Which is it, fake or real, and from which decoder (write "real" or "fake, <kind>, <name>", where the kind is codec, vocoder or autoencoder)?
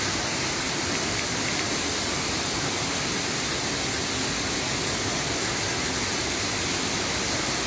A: real